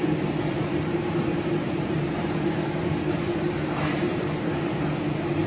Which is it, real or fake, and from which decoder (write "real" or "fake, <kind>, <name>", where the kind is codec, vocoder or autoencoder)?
fake, vocoder, BigVGAN v2